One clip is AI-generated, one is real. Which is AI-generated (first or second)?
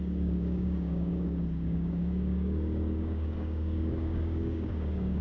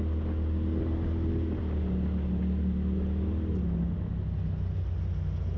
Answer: first